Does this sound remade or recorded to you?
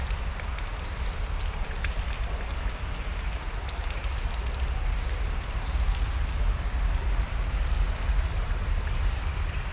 recorded